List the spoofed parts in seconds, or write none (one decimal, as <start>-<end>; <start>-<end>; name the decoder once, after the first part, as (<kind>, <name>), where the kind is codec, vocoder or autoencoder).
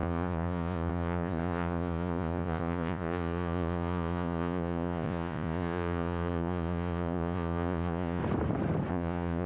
0.0-8.2 (vocoder, Vocos); 8.9-9.5